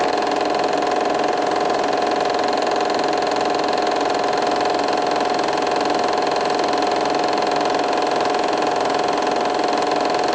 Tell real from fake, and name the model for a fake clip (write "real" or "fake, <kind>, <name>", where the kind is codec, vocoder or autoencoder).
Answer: real